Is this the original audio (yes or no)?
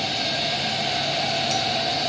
yes